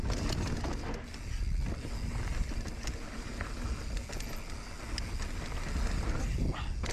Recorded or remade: recorded